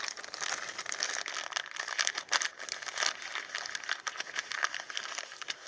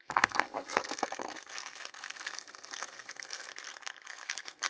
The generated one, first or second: second